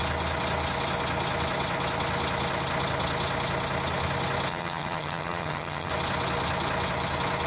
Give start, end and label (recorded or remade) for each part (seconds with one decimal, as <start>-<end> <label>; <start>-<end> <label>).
0.0-4.5 recorded; 4.5-5.9 remade; 5.9-7.5 recorded